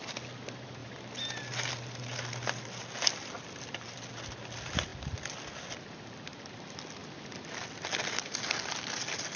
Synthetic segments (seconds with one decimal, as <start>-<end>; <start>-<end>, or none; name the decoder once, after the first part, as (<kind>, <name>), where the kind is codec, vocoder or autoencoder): none